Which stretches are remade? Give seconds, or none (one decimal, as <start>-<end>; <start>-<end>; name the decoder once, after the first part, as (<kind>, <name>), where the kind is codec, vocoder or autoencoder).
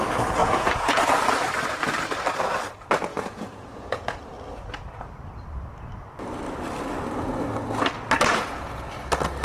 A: 0.4-1.2 (vocoder, Vocos); 3.1-4.3; 8.3-8.9